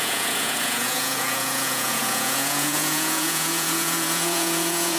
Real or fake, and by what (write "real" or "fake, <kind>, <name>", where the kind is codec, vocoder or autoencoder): fake, vocoder, Vocos